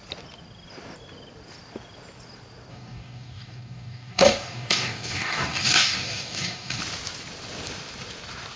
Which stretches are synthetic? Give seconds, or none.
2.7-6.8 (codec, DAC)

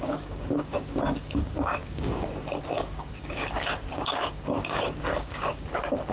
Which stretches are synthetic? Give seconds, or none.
0.0-6.1 (codec, DAC)